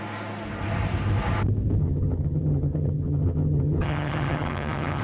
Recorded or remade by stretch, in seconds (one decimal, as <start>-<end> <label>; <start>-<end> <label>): 0.0-1.8 recorded; 1.8-5.0 remade